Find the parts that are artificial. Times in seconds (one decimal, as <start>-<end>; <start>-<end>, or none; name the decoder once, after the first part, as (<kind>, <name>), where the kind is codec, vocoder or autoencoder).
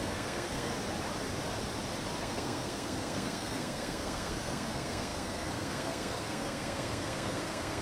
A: 0.0-0.7 (codec, SNAC); 2.2-7.8